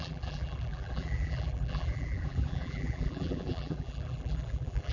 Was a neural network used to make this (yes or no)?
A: yes